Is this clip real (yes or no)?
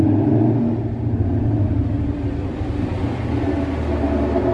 yes